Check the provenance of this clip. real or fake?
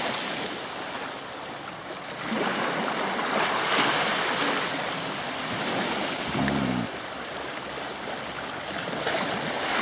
real